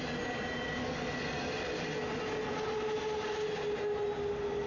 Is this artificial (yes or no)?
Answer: no